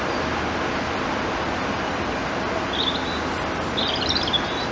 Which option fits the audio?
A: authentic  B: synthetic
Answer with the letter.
A